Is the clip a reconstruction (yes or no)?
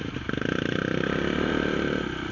no